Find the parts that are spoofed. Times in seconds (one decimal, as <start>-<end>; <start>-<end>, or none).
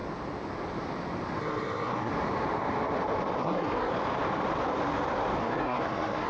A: 1.4-2.1; 3.4-3.9; 5.4-6.3